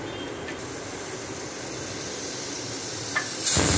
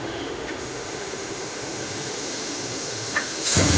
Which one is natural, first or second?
first